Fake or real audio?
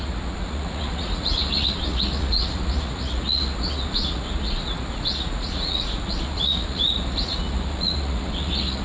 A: fake